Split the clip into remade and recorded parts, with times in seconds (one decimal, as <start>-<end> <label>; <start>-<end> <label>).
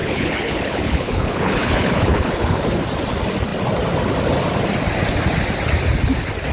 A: 0.0-2.8 remade; 2.8-6.5 recorded